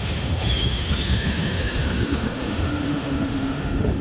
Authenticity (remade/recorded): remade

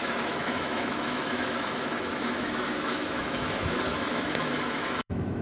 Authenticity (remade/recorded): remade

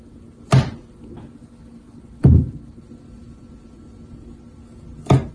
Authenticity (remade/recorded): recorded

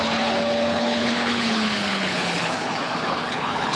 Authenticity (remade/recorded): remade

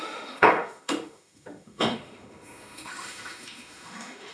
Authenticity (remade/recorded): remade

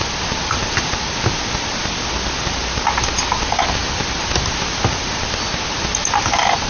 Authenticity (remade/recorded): recorded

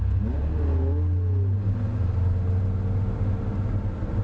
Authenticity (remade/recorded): recorded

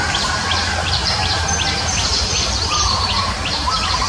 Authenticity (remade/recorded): remade